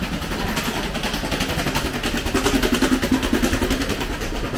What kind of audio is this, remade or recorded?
recorded